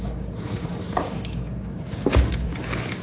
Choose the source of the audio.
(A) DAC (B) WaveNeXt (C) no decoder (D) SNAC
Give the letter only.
A